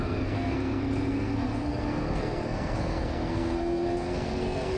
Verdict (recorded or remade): remade